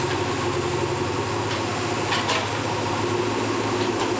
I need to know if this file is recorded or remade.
recorded